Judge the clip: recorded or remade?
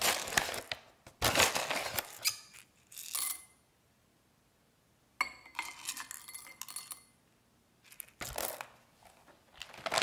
recorded